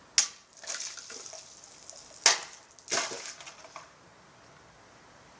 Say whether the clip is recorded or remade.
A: recorded